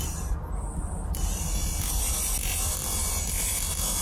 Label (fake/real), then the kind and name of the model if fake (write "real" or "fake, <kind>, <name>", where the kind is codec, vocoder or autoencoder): real